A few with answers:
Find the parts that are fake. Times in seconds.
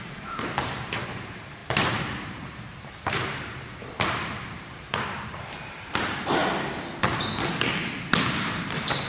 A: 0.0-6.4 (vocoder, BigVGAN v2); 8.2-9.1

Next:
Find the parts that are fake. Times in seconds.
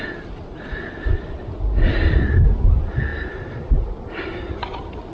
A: 3.1-4.5 (vocoder, BigVGAN v2)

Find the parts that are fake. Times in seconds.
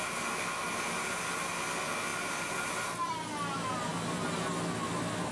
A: 0.6-1.2 (vocoder, BigVGAN v2); 2.1-3.1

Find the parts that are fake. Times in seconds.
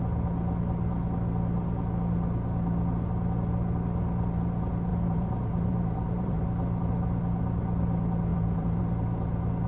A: 4.9-6.4 (vocoder, BigVGAN v2); 8.3-8.8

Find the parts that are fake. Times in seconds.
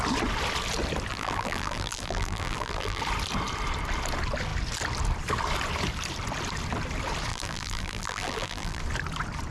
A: 1.1-3.0 (vocoder, BigVGAN v2); 7.3-8.8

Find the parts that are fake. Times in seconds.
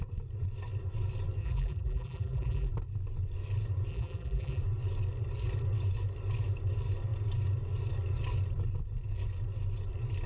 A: 1.4-2.7 (vocoder, BigVGAN v2); 3.9-4.6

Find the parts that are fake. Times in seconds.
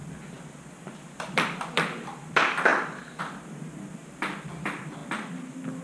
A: 0.7-2.7 (vocoder, BigVGAN v2); 3.2-4.0; 4.5-5.0